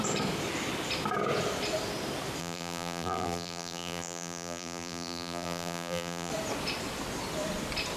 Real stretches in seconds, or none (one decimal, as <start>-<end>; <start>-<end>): 0.0-2.4; 6.3-8.0